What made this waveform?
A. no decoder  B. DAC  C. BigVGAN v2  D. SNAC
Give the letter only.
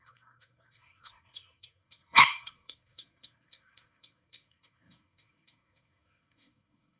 D